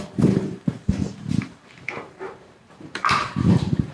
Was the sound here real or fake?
fake